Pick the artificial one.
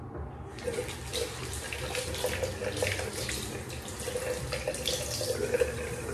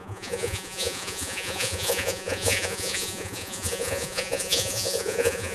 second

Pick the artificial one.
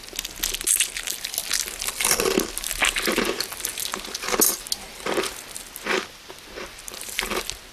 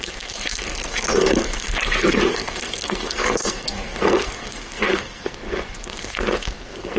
second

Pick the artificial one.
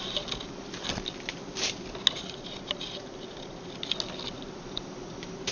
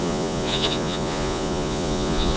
second